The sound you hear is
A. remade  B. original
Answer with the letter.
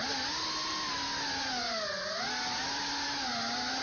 B